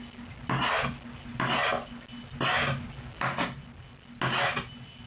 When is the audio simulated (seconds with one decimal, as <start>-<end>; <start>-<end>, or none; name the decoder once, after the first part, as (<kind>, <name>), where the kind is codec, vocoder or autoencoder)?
none